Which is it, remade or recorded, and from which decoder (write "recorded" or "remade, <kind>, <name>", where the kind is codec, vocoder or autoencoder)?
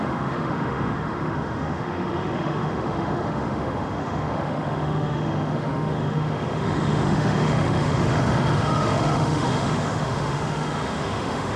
remade, autoencoder, DAC-VAE